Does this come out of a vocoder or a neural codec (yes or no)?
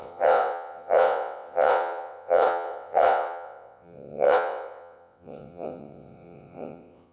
yes